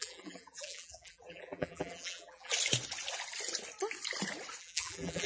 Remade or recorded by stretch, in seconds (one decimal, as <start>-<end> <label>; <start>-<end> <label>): 0.0-2.5 remade; 2.5-4.6 recorded; 4.6-5.3 remade